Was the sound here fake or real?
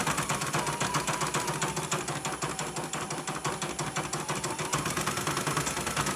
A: real